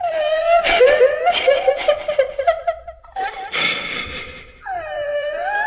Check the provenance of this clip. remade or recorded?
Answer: remade